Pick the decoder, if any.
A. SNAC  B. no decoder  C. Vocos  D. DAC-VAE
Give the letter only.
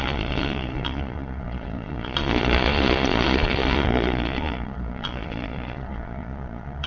C